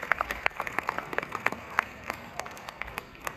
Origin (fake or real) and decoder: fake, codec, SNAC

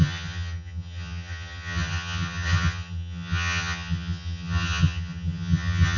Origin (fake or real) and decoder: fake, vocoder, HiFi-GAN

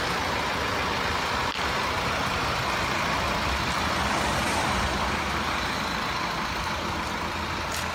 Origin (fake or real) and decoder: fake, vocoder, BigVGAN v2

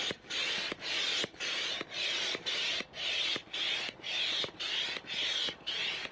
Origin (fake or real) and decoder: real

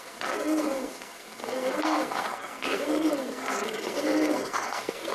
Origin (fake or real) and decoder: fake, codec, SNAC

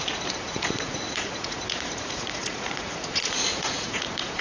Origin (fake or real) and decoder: fake, vocoder, Vocos